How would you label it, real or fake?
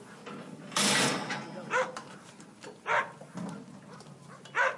real